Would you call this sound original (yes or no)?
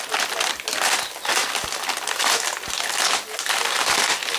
yes